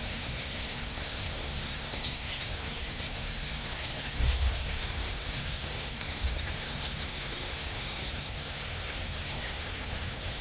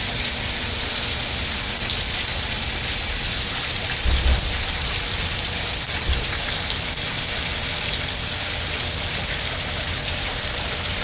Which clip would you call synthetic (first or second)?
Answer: first